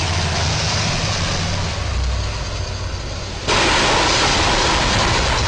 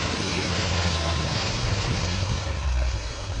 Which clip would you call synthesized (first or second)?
second